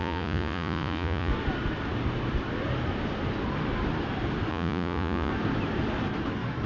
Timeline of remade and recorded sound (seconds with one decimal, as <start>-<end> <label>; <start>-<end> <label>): 0.0-1.3 remade; 1.3-4.5 recorded; 4.5-5.3 remade; 5.3-6.7 recorded